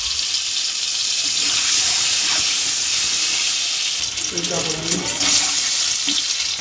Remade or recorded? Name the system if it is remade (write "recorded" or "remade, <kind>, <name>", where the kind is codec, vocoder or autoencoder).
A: recorded